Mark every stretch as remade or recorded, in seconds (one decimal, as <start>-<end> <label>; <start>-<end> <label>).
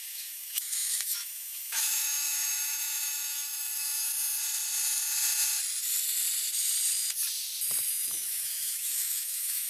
0.0-4.1 remade; 4.1-7.9 recorded; 7.9-9.7 remade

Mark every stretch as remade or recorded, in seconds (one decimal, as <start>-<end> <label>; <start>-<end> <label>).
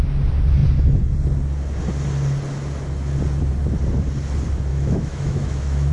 0.0-4.7 recorded; 4.7-5.9 remade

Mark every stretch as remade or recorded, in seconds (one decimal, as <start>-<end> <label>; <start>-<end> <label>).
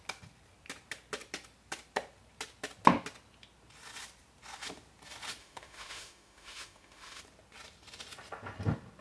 0.0-5.4 recorded; 5.4-7.2 remade; 7.2-9.0 recorded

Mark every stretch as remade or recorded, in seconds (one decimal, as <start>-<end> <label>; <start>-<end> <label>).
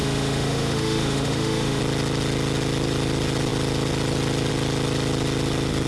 0.0-1.8 remade; 1.8-5.9 recorded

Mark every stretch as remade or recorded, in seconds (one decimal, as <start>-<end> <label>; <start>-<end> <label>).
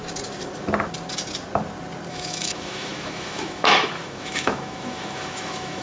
0.0-2.1 recorded; 2.1-5.8 remade